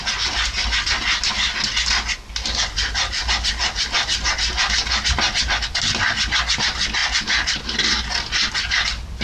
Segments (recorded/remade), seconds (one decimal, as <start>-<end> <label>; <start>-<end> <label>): 0.0-9.2 recorded